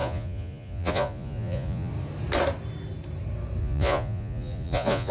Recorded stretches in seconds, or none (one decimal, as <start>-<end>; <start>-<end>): 1.9-3.6